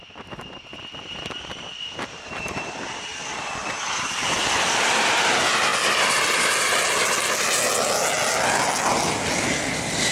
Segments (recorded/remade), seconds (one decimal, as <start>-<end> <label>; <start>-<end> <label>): 0.0-0.7 recorded; 0.7-4.4 remade; 4.4-10.1 recorded